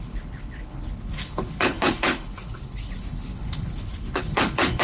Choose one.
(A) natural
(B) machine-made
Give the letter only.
B